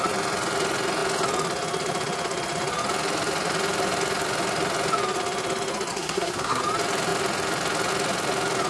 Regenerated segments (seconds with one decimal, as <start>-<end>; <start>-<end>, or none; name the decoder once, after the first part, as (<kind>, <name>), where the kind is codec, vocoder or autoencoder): 5.9-6.6 (codec, SNAC)